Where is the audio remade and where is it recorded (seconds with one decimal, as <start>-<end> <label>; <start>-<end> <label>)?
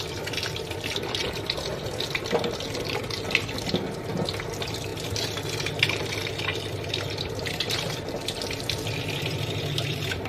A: 0.0-6.5 recorded; 6.5-9.0 remade; 9.0-10.3 recorded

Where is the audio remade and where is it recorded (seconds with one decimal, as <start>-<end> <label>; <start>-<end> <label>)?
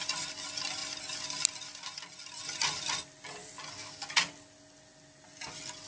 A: 0.0-5.9 recorded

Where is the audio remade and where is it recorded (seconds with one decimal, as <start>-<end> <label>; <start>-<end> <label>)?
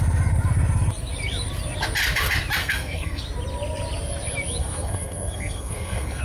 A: 0.0-2.6 recorded; 2.6-3.2 remade; 3.2-4.6 recorded; 4.6-6.2 remade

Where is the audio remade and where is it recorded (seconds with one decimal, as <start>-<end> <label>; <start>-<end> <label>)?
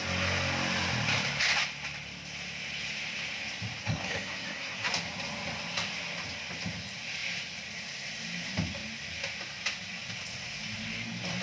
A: 0.0-3.8 recorded; 3.8-4.9 remade; 4.9-11.4 recorded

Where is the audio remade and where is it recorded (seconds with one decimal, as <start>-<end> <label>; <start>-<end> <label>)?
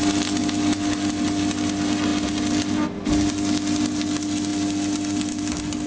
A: 0.0-5.9 recorded